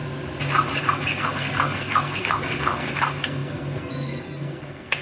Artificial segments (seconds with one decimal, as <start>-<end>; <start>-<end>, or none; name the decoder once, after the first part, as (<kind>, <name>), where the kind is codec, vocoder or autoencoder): 0.8-5.0 (codec, SNAC)